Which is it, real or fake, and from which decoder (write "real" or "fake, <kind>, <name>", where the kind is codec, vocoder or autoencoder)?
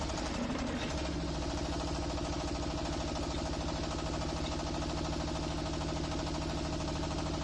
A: real